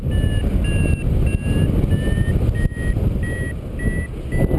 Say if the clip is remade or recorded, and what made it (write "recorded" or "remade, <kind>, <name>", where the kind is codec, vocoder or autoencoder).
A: recorded